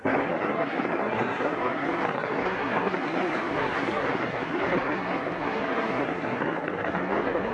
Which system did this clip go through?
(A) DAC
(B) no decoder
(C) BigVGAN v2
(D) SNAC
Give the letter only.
D